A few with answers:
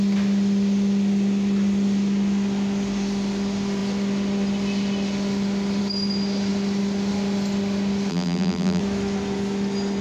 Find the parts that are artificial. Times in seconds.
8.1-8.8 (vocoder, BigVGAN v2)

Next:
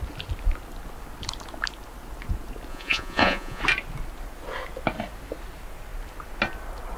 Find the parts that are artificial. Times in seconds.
2.7-3.6 (vocoder, Vocos)

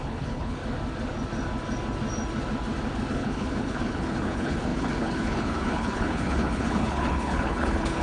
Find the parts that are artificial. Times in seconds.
0.0-0.6 (codec, HILCodec); 3.1-8.0

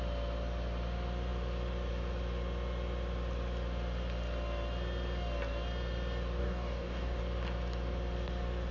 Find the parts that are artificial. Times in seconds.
6.4-7.2 (codec, DAC)

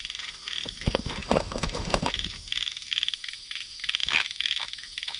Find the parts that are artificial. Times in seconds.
0.0-5.2 (autoencoder, DAC-VAE)